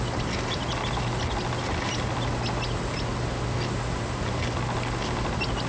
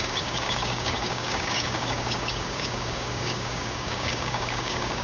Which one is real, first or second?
first